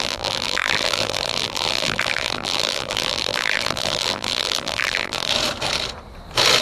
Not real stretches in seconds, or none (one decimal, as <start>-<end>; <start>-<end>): 0.0-5.3